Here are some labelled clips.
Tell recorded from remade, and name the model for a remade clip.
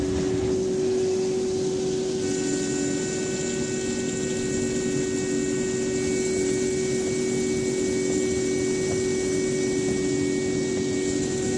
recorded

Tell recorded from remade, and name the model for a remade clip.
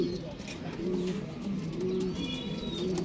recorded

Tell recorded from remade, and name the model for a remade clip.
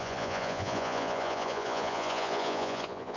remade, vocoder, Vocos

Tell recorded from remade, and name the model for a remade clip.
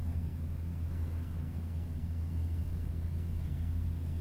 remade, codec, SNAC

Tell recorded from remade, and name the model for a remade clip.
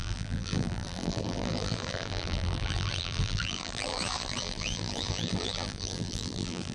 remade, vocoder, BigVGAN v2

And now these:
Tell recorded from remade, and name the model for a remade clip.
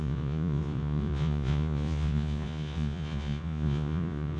remade, vocoder, Vocos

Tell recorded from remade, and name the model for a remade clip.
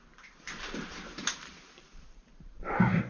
remade, vocoder, BigVGAN v2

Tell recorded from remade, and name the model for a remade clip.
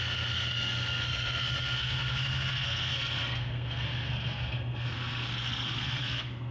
remade, codec, SNAC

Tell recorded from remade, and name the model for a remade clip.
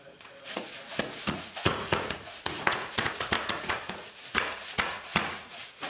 remade, vocoder, Vocos